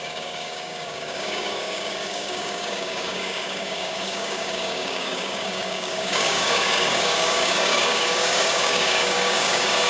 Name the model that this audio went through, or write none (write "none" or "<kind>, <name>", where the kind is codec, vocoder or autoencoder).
codec, DAC